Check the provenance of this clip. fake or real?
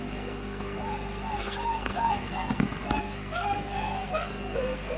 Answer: fake